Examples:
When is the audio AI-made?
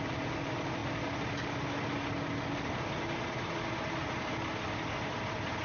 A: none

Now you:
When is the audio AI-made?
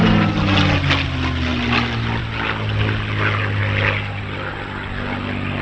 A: none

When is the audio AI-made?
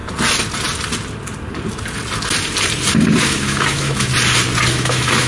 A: 3.2-4.1 (autoencoder, DAC-VAE); 4.7-5.3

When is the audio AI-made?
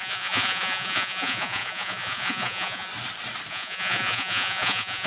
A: 0.0-2.9 (vocoder, Vocos); 3.5-5.1